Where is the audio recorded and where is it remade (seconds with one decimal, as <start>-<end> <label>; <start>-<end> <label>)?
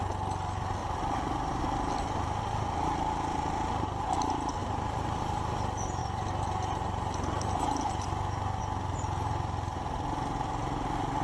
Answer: 0.0-0.8 recorded; 0.8-1.6 remade; 1.6-4.6 recorded; 4.6-5.2 remade; 5.2-11.2 recorded